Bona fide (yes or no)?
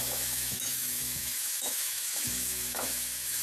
no